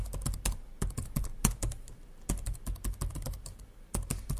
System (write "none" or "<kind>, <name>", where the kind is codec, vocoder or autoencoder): none